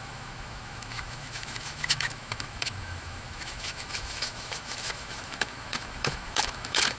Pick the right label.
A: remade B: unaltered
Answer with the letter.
A